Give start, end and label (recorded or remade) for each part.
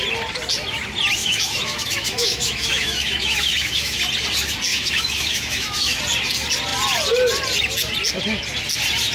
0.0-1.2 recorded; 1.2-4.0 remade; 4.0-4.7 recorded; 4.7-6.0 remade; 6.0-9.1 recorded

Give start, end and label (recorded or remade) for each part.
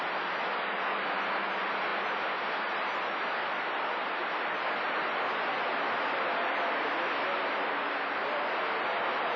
0.0-9.4 recorded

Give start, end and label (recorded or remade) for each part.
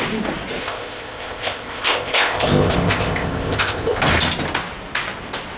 0.0-0.6 recorded; 0.6-4.0 remade; 4.0-5.6 recorded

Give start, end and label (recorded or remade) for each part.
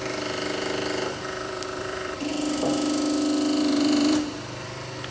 0.0-2.3 remade; 2.3-3.6 recorded; 3.6-5.1 remade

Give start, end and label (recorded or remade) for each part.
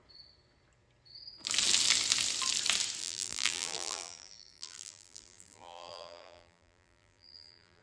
0.0-3.0 recorded; 3.0-7.8 remade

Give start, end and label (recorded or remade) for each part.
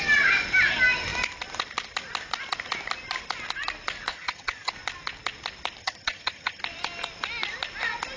0.0-4.1 recorded; 4.1-4.7 remade; 4.7-5.8 recorded; 5.8-6.6 remade; 6.6-8.2 recorded